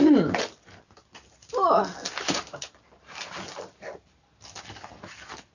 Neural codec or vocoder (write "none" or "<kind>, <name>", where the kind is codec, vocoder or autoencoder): none